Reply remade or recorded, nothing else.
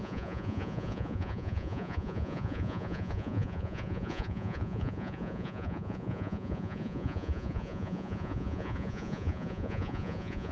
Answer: remade